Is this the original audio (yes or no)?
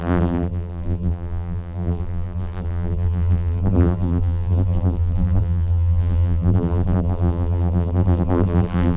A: no